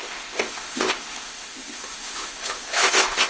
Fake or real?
fake